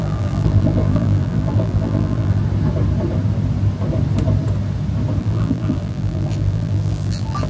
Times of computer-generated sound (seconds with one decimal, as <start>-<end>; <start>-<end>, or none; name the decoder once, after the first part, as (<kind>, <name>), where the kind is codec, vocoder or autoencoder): 0.0-2.4 (vocoder, BigVGAN v2); 5.2-7.5